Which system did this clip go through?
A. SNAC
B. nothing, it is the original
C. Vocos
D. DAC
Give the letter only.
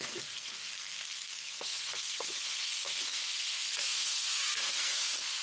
A